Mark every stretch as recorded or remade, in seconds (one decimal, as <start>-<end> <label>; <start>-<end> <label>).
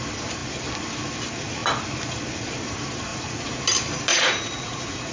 0.0-3.1 recorded; 3.1-3.6 remade; 3.6-4.1 recorded; 4.1-5.1 remade